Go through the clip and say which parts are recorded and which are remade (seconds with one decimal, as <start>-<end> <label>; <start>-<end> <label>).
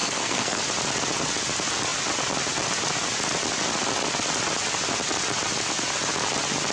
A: 0.0-0.6 remade; 0.6-6.7 recorded